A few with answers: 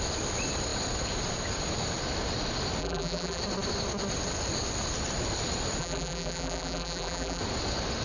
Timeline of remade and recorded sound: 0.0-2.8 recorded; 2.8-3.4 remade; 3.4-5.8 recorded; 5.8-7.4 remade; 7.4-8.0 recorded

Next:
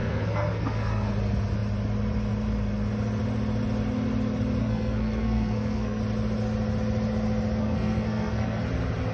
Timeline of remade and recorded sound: 0.0-1.1 remade; 1.1-4.6 recorded; 4.6-6.0 remade; 6.0-7.6 recorded; 7.6-8.6 remade; 8.6-9.1 recorded

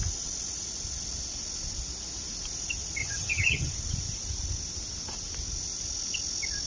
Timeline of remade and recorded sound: 0.0-3.0 recorded; 3.0-3.7 remade; 3.7-6.7 recorded